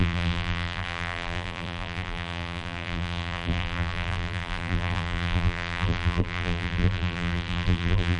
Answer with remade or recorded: remade